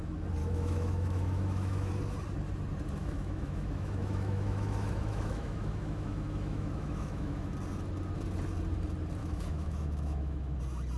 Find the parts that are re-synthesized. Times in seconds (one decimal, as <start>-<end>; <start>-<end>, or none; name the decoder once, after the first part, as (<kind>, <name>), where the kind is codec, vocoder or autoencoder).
0.4-1.9 (autoencoder, DAC-VAE); 3.0-7.5; 9.2-10.6